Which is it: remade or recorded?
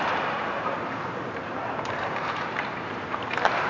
remade